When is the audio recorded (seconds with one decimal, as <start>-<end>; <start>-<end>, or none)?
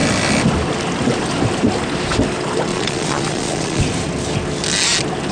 0.0-2.7; 3.8-5.3